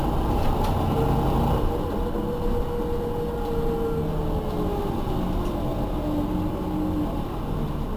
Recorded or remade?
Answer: recorded